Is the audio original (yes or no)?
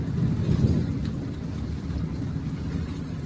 yes